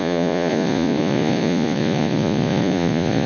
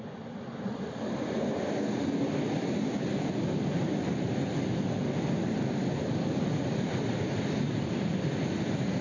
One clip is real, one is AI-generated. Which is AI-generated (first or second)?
first